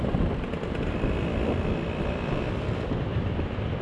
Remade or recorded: remade